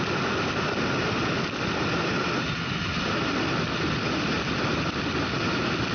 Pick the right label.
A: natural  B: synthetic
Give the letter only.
A